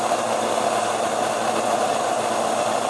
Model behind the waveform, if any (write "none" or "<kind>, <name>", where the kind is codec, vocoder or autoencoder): none